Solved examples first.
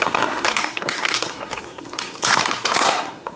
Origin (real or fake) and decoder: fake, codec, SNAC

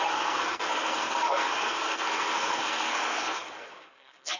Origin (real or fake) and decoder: fake, codec, SNAC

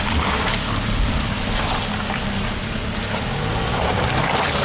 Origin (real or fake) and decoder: real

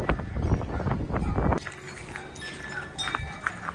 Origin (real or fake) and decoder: real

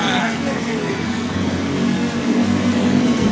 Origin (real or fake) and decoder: fake, codec, SNAC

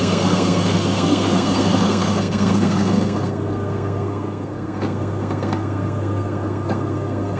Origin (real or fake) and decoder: fake, codec, SNAC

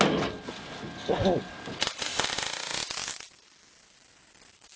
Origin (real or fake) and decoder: real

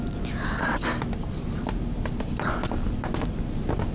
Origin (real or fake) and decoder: real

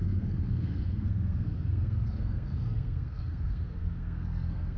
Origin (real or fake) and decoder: fake, codec, SNAC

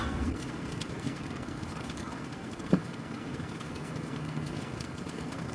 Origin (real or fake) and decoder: fake, codec, SNAC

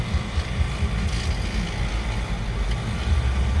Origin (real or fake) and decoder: real